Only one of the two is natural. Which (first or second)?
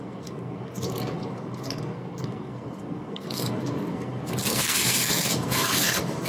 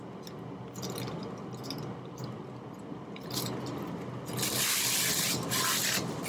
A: second